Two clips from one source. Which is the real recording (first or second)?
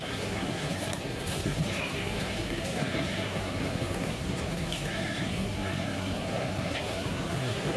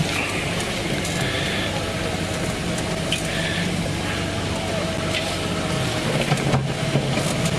second